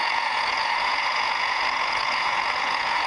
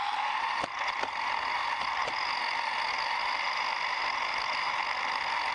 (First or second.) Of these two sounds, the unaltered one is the second